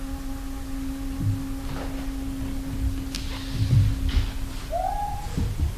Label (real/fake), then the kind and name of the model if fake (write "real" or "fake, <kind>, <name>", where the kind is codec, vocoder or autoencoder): real